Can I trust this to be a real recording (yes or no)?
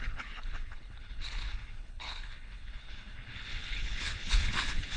no